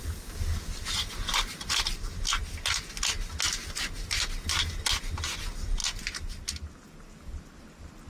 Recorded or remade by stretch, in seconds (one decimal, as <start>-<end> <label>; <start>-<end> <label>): 0.0-8.1 recorded